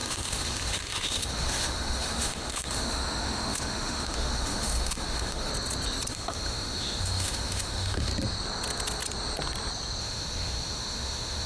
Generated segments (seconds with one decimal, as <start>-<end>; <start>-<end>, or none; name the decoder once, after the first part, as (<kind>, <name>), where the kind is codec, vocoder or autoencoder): 0.0-5.5 (autoencoder, DAC-VAE); 6.1-8.1; 10.0-11.5